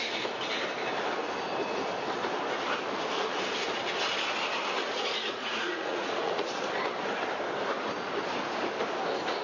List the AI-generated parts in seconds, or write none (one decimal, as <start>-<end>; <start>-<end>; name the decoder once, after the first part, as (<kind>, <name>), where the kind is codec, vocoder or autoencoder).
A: 4.8-6.7 (vocoder, Vocos)